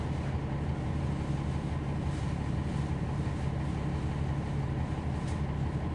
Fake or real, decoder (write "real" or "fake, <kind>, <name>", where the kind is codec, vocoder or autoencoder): real